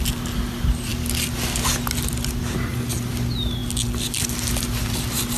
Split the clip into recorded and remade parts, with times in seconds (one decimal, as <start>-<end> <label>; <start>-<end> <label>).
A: 0.0-5.4 recorded